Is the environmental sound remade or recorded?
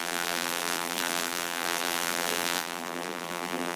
remade